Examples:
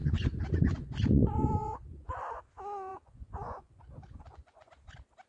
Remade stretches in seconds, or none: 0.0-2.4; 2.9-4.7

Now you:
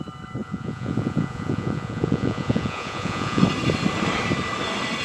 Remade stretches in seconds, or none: 0.4-3.4

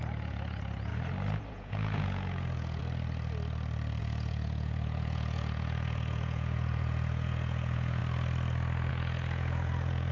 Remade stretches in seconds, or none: 0.0-0.9; 1.5-2.8; 4.0-8.0; 8.9-10.1